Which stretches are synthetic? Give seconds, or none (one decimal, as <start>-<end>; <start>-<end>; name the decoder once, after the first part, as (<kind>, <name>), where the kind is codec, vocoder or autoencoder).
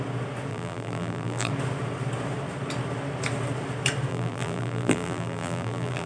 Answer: 0.5-1.5 (vocoder, BigVGAN v2); 4.1-6.1